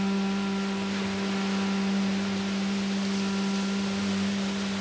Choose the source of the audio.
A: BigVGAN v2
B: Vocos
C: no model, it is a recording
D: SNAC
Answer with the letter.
C